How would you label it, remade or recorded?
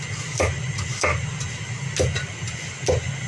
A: recorded